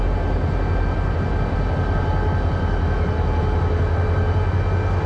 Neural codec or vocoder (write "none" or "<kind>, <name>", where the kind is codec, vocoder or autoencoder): none